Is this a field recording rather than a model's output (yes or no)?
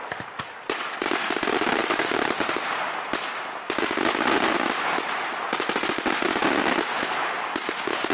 yes